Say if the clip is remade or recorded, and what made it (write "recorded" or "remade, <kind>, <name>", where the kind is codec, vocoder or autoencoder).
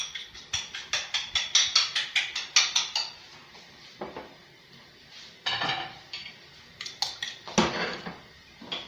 recorded